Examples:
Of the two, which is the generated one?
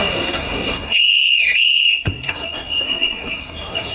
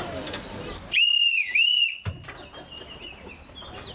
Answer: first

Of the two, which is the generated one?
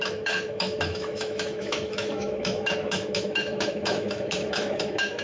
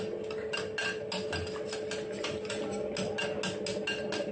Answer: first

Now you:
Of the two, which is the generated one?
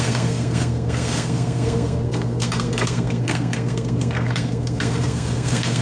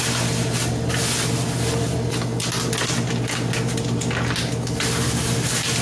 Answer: first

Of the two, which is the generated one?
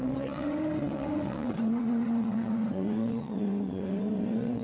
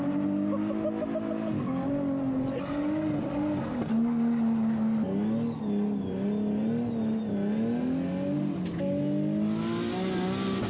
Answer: first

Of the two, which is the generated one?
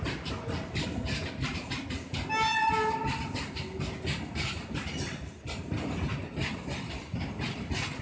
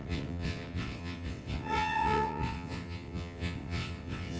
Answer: second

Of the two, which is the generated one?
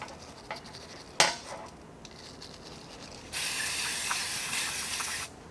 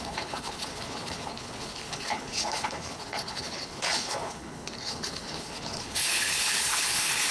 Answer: second